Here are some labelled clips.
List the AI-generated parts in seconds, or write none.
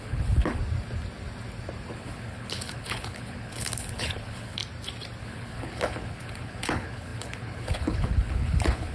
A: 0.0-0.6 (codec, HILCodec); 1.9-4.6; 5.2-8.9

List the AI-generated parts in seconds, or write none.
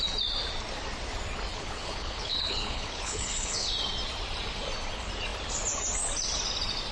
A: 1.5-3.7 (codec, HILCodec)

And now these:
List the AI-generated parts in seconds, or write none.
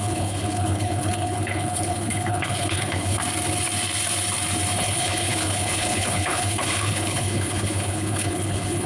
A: 0.0-3.2 (codec, HILCodec); 4.8-8.9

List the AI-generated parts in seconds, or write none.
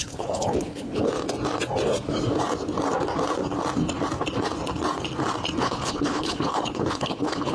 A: 0.0-1.1 (codec, HILCodec); 5.6-7.5